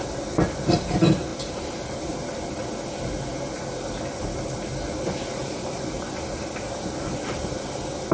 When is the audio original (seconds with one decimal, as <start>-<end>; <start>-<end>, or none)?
0.0-8.1